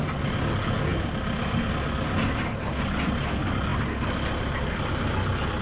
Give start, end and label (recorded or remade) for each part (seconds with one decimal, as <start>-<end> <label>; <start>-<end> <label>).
0.0-5.6 recorded